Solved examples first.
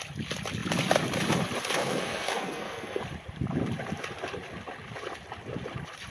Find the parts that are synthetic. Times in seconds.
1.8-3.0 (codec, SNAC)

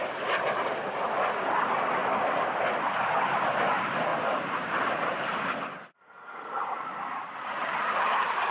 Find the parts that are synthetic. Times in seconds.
4.1-8.5 (vocoder, BigVGAN v2)